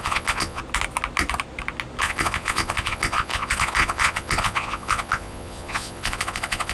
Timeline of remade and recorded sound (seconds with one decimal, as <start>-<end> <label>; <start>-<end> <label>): 0.0-0.6 remade; 0.6-2.0 recorded; 2.0-6.7 remade